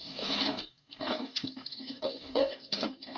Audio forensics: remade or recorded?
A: remade